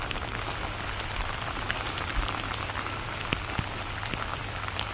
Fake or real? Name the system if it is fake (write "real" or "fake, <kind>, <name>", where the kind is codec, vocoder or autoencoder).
real